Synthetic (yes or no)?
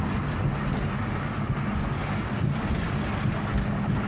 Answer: no